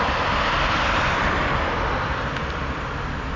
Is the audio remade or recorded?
remade